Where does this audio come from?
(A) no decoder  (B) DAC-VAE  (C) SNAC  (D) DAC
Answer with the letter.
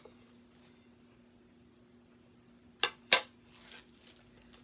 A